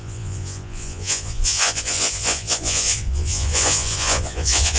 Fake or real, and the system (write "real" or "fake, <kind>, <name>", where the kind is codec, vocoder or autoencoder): fake, vocoder, Vocos